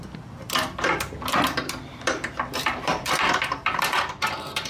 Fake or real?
fake